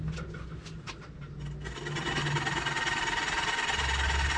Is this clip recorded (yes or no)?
yes